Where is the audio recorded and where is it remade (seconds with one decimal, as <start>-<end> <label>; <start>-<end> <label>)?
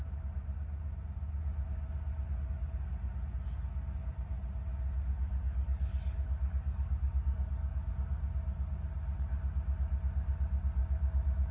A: 0.0-5.3 recorded; 5.3-7.9 remade; 7.9-11.5 recorded